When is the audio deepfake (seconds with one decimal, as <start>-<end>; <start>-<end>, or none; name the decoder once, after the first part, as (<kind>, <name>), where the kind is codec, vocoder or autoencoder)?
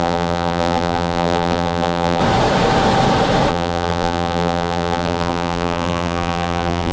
0.0-2.2 (vocoder, BigVGAN v2); 3.5-6.9